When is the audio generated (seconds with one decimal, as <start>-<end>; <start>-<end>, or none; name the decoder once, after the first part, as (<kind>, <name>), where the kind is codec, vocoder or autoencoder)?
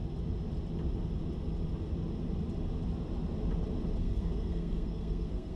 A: 4.0-5.6 (codec, SNAC)